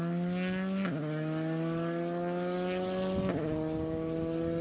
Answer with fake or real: real